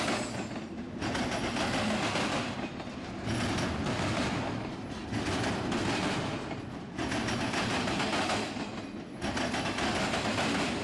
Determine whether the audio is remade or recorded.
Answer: recorded